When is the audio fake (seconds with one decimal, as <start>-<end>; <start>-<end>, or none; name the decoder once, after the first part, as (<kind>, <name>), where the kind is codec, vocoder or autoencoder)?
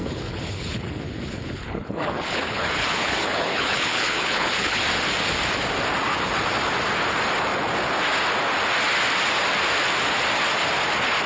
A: 0.0-4.8 (codec, HILCodec)